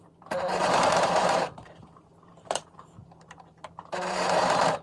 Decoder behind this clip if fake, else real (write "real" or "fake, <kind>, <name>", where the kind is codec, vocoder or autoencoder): fake, vocoder, BigVGAN v2